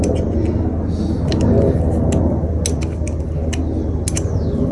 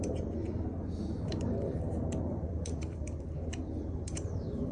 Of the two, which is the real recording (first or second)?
first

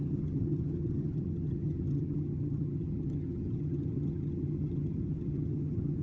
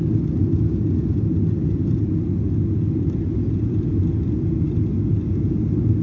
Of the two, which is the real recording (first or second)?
second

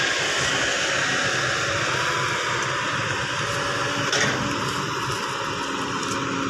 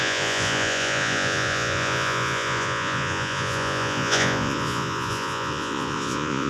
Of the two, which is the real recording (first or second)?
first